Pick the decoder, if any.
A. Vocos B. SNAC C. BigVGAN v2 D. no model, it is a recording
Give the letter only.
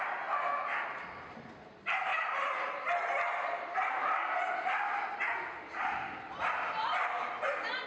D